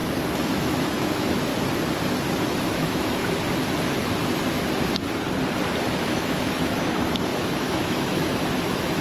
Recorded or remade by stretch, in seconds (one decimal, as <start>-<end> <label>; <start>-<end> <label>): 0.0-0.5 recorded; 0.5-1.5 remade; 1.5-2.7 recorded; 2.7-3.2 remade; 3.2-6.0 recorded; 6.0-9.0 remade